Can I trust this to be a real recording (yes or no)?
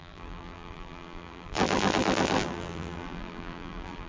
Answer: no